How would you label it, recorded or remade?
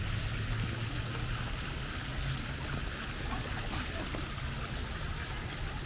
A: recorded